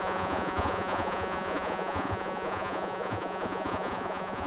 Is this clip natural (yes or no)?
no